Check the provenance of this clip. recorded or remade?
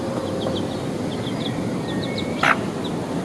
recorded